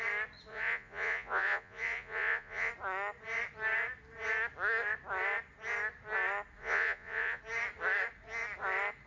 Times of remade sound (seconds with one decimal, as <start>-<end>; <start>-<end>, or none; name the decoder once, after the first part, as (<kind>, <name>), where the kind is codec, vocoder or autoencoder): 0.5-2.7 (vocoder, Vocos); 6.6-7.4